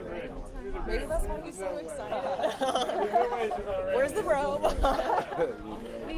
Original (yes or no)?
yes